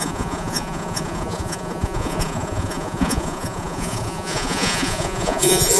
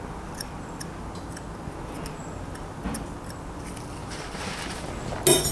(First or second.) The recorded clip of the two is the second